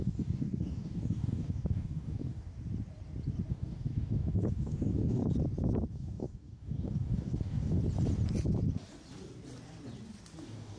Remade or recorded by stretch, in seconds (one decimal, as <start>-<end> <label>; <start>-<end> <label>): 0.0-2.5 remade; 2.5-3.5 recorded; 3.5-5.2 remade; 5.2-5.9 recorded; 5.9-7.8 remade; 7.8-10.4 recorded; 10.4-10.8 remade